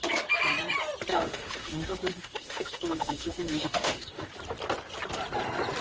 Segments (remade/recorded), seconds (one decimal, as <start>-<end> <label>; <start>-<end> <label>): 0.0-1.1 recorded; 1.1-4.3 remade; 4.3-5.8 recorded